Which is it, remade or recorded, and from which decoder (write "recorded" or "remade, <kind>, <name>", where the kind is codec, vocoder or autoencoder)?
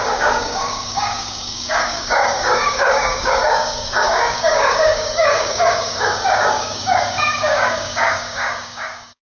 remade, codec, DAC